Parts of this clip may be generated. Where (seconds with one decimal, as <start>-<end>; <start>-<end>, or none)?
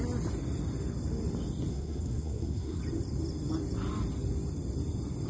1.7-2.8